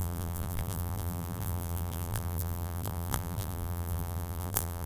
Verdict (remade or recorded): remade